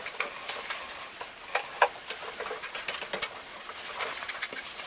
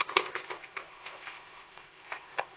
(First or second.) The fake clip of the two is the second